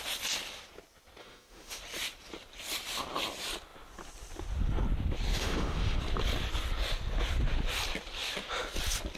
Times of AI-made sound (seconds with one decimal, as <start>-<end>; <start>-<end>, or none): 1.2-1.8; 5.3-6.0